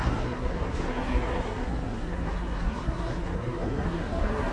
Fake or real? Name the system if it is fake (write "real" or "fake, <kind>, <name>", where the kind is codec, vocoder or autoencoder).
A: fake, codec, SNAC